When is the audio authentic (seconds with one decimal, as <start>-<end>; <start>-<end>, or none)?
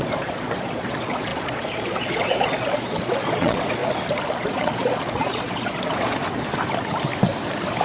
3.8-4.4; 6.2-7.8